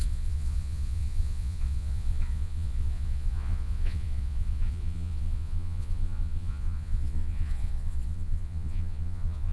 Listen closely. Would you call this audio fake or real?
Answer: fake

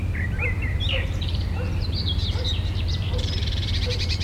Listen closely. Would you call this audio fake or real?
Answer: fake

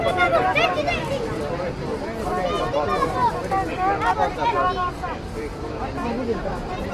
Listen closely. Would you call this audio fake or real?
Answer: real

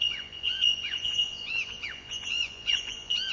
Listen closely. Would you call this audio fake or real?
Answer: fake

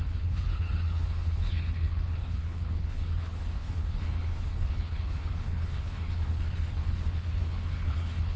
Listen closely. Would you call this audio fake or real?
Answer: fake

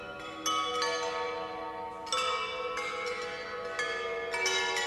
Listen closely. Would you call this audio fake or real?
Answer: real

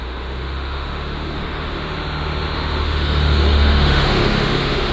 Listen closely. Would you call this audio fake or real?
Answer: fake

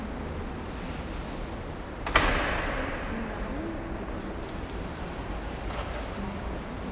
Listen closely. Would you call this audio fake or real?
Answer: real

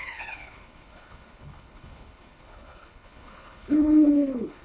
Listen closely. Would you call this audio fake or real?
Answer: fake